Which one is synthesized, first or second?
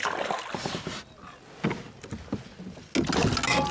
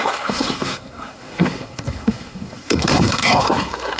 second